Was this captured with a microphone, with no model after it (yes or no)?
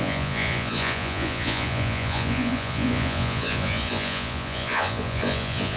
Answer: no